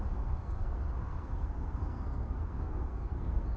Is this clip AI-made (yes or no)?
yes